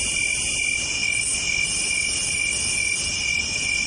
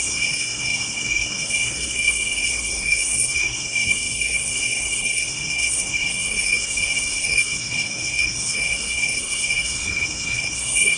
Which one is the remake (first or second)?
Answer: second